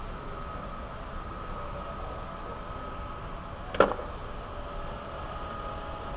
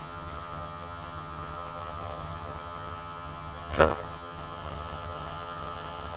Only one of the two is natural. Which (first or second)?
first